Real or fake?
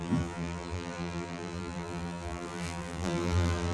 fake